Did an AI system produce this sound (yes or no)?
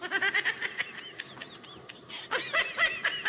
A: no